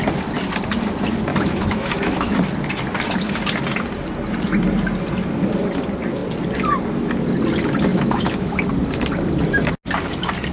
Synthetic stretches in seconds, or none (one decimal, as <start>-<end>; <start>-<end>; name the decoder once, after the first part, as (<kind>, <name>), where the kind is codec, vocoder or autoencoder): 1.3-2.4 (autoencoder, DAC-VAE); 7.9-8.6